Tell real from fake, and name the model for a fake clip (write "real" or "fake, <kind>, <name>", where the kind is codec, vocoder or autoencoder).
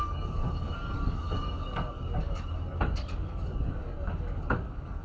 fake, codec, DAC